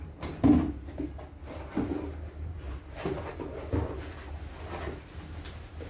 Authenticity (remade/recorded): recorded